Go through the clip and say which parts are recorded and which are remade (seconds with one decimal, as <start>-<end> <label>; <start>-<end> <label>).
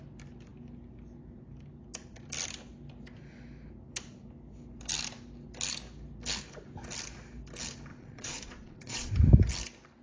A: 0.0-7.9 recorded; 7.9-9.1 remade; 9.1-10.0 recorded